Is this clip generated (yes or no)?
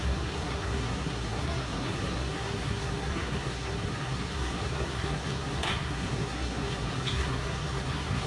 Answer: yes